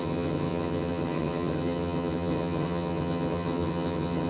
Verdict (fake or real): fake